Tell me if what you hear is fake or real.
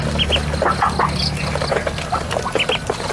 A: real